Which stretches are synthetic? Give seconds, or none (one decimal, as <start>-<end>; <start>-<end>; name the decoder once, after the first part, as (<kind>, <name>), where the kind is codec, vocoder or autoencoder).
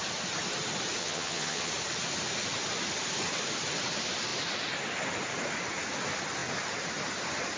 1.0-1.7 (vocoder, HiFi-GAN)